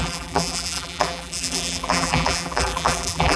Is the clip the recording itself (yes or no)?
no